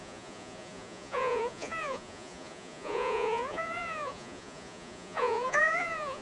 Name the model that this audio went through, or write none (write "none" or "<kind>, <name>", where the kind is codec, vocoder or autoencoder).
vocoder, Vocos